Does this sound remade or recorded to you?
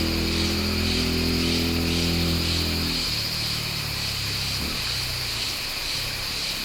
recorded